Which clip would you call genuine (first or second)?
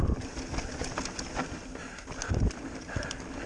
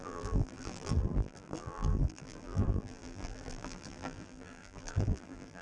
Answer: first